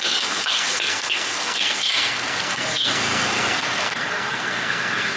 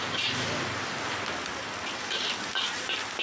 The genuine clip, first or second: second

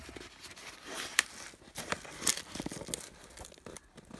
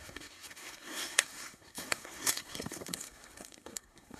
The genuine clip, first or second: first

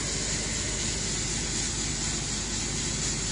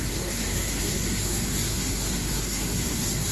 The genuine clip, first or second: first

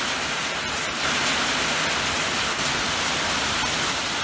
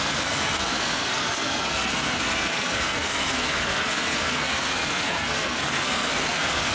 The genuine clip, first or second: first